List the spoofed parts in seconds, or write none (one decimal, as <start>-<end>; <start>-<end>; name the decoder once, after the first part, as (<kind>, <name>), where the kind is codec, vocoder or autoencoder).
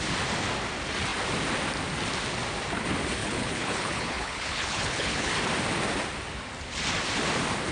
3.2-5.3 (codec, HILCodec)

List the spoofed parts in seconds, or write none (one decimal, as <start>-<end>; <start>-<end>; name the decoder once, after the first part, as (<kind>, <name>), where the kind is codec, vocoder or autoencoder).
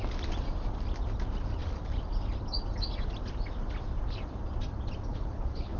5.1-5.8 (codec, HILCodec)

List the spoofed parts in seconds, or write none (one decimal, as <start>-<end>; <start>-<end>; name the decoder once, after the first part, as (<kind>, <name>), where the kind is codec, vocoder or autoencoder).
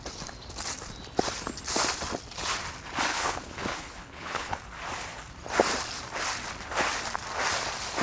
3.1-4.6 (codec, HILCodec)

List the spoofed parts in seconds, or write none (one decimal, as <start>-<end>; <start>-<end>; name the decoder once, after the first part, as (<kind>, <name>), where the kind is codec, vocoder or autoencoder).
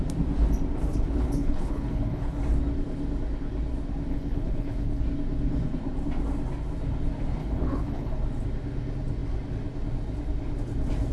0.9-2.4 (codec, HILCodec); 4.1-5.0; 7.4-8.1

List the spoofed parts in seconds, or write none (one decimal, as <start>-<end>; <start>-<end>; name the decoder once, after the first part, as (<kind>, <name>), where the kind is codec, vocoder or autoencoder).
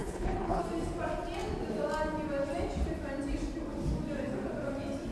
0.0-0.6 (codec, HILCodec)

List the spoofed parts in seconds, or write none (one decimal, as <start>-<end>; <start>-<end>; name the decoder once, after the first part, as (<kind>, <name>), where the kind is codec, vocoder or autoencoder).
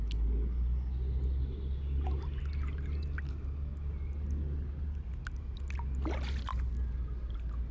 none